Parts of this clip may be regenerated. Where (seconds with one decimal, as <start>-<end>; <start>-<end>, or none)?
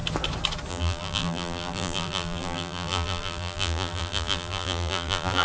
0.7-5.4